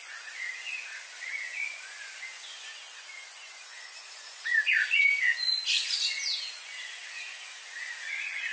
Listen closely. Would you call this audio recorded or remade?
remade